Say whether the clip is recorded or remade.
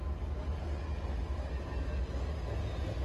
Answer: recorded